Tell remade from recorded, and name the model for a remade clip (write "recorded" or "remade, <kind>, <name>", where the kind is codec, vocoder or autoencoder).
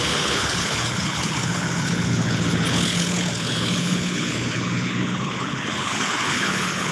remade, codec, HILCodec